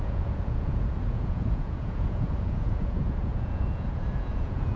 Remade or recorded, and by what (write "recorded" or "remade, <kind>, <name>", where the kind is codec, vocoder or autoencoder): remade, vocoder, Vocos